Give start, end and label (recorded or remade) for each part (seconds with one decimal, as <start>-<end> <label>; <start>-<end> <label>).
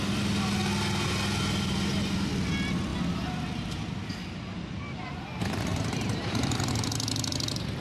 0.0-5.7 recorded; 5.7-6.7 remade; 6.7-7.8 recorded